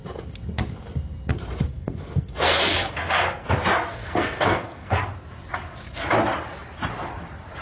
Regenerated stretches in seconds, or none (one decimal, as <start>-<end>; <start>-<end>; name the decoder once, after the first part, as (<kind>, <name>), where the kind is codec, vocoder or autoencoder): 1.7-3.5 (codec, SNAC); 3.9-5.0